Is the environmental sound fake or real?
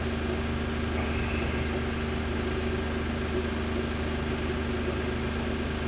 real